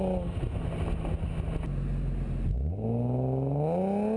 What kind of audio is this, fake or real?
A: real